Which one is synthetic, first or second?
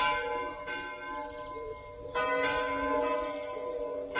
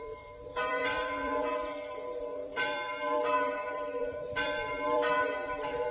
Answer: second